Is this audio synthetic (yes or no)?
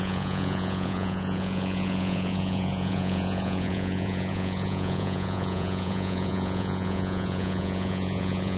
yes